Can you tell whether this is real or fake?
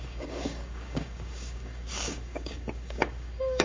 fake